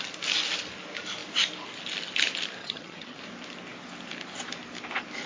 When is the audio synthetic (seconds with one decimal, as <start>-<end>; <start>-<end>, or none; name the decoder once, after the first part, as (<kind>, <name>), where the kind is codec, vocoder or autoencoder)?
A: 2.6-3.2 (vocoder, HiFi-GAN)